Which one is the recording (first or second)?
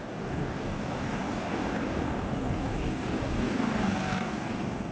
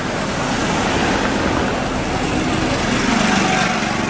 second